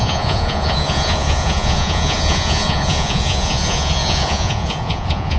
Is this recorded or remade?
remade